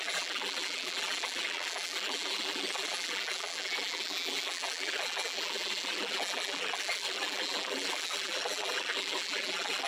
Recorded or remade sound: remade